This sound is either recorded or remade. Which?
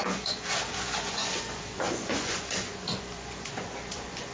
remade